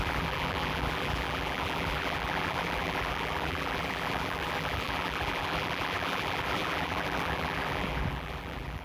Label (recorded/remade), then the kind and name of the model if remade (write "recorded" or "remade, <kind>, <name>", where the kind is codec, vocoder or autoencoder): remade, vocoder, BigVGAN v2